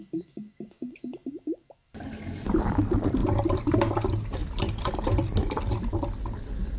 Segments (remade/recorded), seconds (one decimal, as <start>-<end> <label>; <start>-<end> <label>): 0.0-1.2 recorded; 1.2-2.6 remade; 2.6-3.2 recorded; 3.2-3.7 remade; 3.7-4.4 recorded; 4.4-6.8 remade